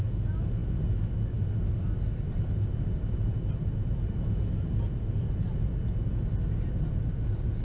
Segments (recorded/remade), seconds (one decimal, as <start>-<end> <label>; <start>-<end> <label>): 0.0-7.6 recorded